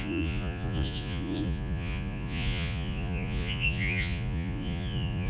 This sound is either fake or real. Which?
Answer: fake